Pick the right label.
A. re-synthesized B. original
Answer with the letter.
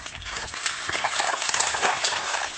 A